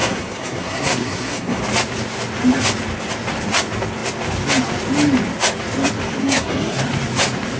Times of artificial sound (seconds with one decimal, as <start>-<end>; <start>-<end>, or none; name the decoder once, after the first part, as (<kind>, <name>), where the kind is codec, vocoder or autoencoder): 0.0-1.6 (codec, SNAC); 6.2-6.8